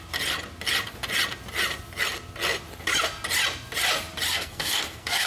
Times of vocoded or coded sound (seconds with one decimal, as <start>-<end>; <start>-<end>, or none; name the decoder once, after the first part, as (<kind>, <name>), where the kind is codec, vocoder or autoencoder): 4.3-5.3 (codec, SNAC)